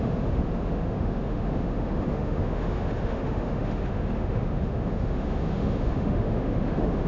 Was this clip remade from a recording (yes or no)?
yes